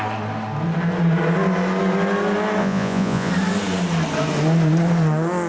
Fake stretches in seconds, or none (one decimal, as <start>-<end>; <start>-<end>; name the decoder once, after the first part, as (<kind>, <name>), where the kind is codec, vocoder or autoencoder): 2.6-3.3 (vocoder, Vocos)